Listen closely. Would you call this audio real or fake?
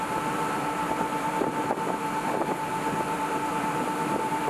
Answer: fake